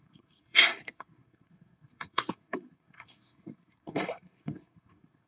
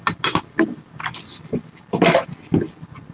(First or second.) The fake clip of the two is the first